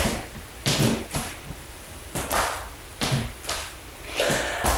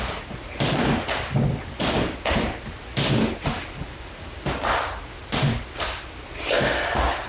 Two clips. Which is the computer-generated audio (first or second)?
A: first